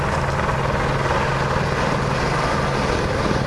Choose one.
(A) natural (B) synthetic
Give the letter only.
A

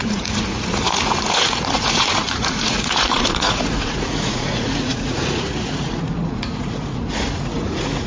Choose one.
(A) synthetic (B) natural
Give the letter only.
A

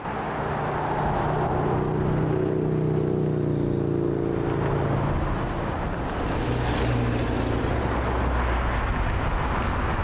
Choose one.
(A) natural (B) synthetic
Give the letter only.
A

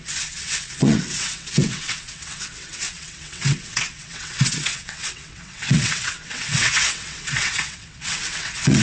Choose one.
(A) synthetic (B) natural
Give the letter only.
A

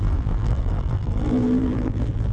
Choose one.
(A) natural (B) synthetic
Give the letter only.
B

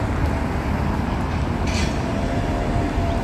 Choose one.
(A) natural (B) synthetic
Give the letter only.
A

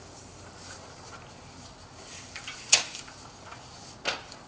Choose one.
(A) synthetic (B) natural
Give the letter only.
B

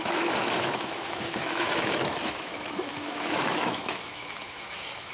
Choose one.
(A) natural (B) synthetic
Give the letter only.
B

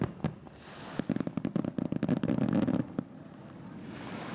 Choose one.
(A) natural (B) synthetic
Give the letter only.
A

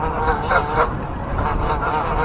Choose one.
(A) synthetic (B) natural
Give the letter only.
B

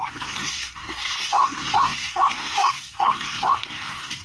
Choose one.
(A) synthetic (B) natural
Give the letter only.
A